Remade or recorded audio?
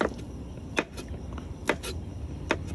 recorded